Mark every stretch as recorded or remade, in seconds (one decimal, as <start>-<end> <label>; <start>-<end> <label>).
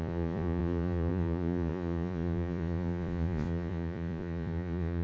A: 0.0-5.0 remade